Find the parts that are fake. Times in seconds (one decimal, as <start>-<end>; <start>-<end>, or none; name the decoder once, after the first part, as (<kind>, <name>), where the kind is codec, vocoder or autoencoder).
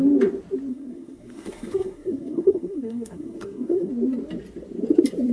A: 0.7-3.9 (codec, SNAC)